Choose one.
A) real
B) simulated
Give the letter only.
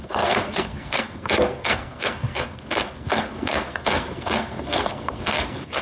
B